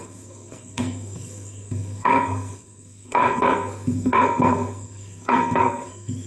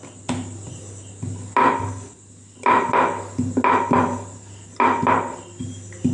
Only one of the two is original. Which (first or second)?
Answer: second